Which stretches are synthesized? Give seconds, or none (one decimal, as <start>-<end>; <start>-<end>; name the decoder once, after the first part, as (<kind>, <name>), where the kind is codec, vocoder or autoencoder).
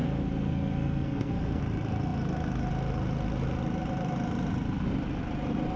0.0-1.6 (codec, SNAC)